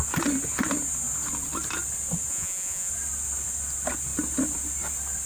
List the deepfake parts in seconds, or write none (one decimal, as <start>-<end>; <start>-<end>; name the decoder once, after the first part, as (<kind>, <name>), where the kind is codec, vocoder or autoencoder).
2.3-2.9 (vocoder, Vocos)